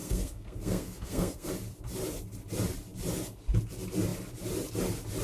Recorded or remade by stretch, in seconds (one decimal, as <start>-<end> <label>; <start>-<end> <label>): 0.0-1.5 remade; 1.5-5.2 recorded